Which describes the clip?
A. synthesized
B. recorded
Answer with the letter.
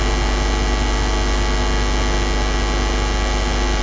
B